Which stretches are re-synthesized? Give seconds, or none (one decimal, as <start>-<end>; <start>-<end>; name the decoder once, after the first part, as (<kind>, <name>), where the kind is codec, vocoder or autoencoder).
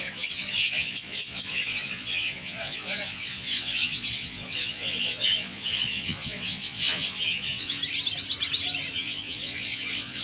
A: 0.0-7.8 (vocoder, Vocos); 8.9-10.2